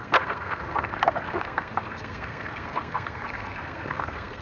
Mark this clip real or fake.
fake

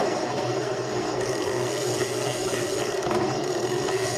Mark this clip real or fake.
fake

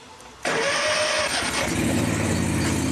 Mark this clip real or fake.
real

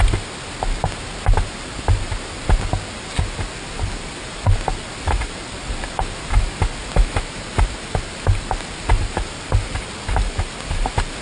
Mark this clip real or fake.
real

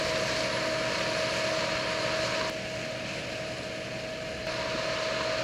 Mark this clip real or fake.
real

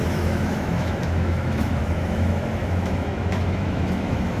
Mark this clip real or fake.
fake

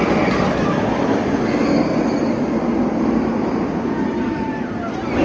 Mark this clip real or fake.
real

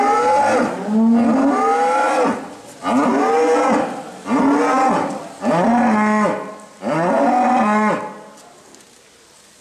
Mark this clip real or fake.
real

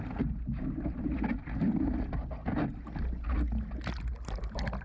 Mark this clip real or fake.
real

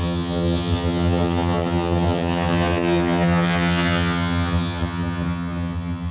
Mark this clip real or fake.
fake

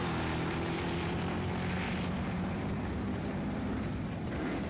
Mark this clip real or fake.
fake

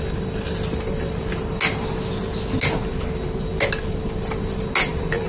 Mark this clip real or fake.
real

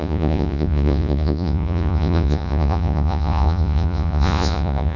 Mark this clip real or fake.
fake